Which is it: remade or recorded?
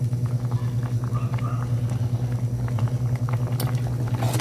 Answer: recorded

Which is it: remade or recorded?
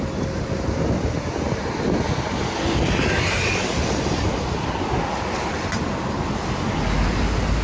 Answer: recorded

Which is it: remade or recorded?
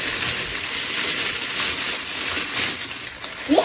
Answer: recorded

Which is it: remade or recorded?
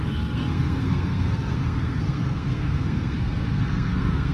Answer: remade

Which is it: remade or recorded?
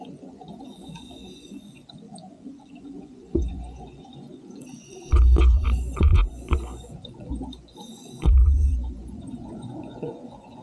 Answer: remade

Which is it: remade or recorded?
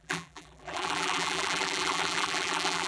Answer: remade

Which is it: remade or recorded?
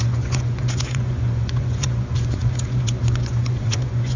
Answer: remade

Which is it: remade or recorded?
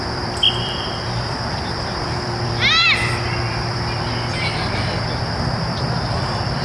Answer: remade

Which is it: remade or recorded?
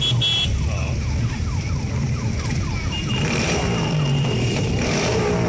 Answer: remade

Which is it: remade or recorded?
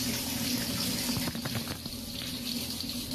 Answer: recorded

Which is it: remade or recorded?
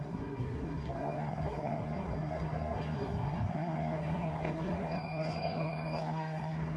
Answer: remade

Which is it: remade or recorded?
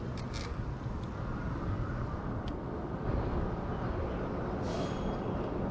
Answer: recorded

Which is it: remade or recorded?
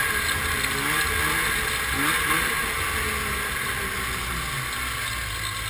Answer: recorded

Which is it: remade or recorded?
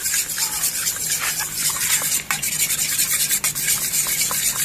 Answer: recorded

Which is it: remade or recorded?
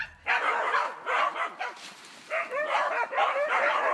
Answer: recorded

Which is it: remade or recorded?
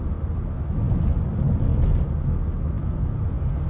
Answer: recorded